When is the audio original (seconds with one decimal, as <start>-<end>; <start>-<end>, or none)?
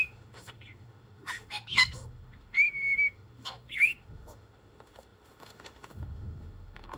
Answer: none